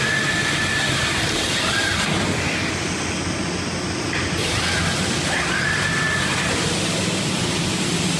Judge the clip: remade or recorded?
recorded